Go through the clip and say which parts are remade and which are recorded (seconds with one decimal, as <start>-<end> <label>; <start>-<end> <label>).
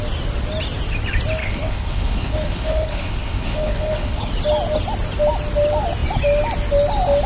0.0-1.4 recorded; 1.4-4.3 remade; 4.3-7.3 recorded